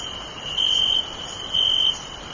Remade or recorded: recorded